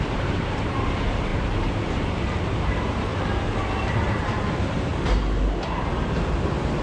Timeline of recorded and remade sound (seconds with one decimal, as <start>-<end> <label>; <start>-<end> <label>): 0.0-3.1 remade; 3.1-3.8 recorded; 3.8-4.9 remade; 4.9-5.9 recorded; 5.9-6.8 remade